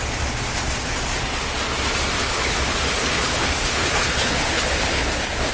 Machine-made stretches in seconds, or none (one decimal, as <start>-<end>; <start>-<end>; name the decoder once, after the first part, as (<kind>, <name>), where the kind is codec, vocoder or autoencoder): 2.3-5.5 (codec, HILCodec)